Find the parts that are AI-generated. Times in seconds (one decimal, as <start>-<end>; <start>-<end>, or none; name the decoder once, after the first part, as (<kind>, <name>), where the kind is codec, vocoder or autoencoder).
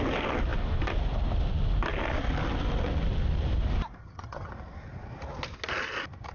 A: 4.0-4.5 (vocoder, HiFi-GAN)